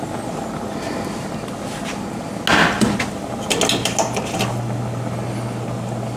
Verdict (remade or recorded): recorded